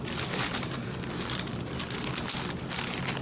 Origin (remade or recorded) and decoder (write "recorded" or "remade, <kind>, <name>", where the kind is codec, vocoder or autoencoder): recorded